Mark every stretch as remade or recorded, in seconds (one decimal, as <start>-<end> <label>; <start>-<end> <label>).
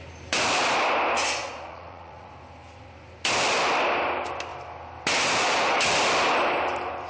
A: 0.0-1.4 recorded; 1.4-2.3 remade; 2.3-7.1 recorded